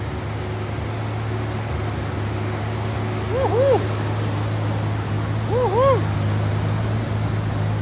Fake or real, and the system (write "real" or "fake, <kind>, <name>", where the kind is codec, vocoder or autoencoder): real